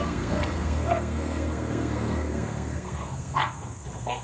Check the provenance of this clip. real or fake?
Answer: fake